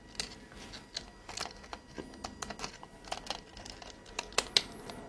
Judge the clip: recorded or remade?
recorded